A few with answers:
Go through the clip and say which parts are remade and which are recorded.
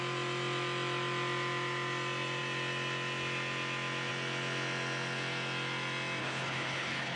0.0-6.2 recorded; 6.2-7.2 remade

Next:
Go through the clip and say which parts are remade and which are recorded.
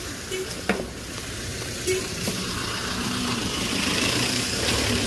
0.0-5.1 remade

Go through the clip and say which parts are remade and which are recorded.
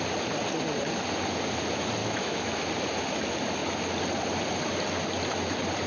0.0-2.0 recorded; 2.0-2.6 remade; 2.6-5.9 recorded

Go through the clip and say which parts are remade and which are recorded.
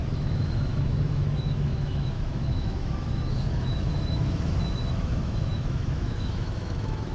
0.0-7.1 remade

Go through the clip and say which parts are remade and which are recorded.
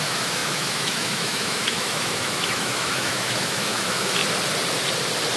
0.0-4.2 remade; 4.2-5.4 recorded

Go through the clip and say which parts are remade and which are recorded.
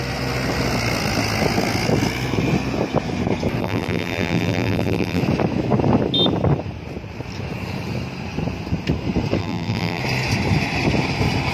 0.0-3.6 recorded; 3.6-5.2 remade; 5.2-9.4 recorded; 9.4-10.0 remade; 10.0-11.5 recorded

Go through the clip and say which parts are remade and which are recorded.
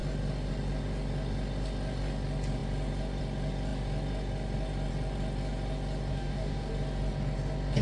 0.0-6.1 recorded; 6.1-6.7 remade; 6.7-7.8 recorded